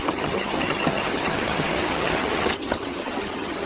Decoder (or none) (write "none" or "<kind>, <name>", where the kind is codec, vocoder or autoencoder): vocoder, HiFi-GAN